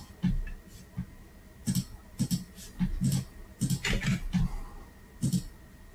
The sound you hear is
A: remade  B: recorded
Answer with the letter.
B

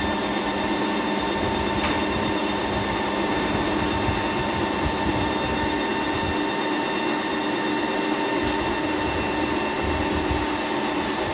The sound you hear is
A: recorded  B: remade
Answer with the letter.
A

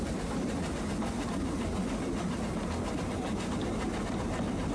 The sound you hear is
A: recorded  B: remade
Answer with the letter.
A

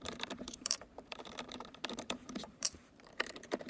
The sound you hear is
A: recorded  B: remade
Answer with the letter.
B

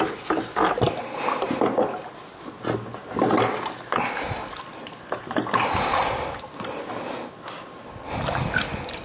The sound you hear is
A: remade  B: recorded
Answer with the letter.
B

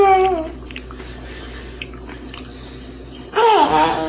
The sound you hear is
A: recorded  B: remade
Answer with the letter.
A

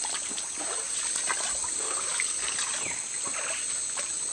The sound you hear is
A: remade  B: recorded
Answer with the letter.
B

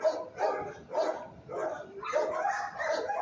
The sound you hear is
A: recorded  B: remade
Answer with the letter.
A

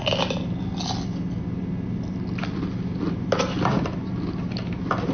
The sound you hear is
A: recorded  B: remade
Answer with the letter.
A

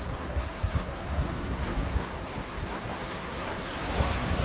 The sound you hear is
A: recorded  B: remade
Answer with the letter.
B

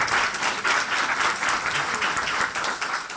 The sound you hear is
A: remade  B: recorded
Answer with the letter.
B